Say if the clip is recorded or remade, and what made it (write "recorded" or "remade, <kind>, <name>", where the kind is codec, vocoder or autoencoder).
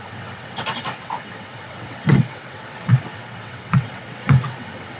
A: remade, vocoder, WaveNeXt